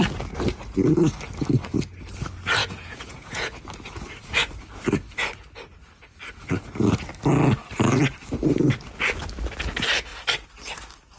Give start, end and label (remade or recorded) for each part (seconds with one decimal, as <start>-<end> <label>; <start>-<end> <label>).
0.0-2.6 recorded; 2.6-3.6 remade; 3.6-11.2 recorded